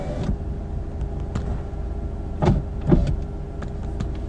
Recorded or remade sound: recorded